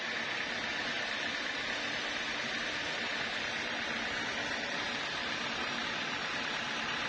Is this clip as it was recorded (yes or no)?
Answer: yes